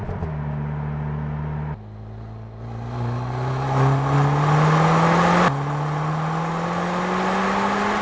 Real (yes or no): yes